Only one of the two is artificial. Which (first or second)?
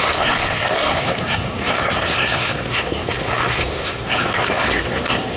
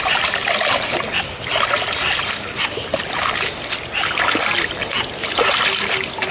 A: first